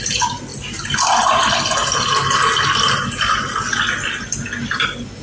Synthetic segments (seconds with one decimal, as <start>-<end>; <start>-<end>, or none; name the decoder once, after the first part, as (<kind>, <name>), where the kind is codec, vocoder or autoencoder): none